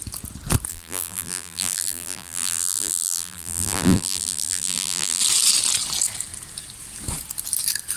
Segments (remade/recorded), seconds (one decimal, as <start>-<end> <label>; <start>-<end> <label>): 0.0-0.7 recorded; 0.7-5.2 remade; 5.2-8.0 recorded